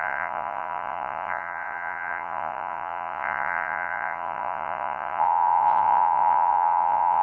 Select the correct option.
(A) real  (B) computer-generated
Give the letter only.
B